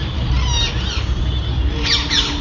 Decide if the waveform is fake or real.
real